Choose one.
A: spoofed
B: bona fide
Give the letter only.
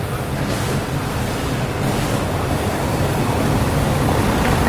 B